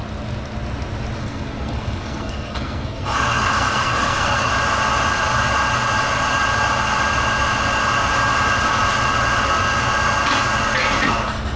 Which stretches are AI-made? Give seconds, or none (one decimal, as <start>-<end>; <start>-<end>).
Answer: 1.2-4.5